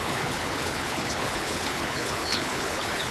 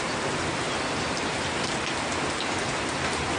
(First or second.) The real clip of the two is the second